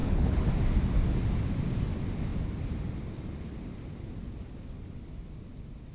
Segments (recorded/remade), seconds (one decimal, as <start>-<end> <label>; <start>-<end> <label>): 0.0-0.5 remade; 0.5-5.9 recorded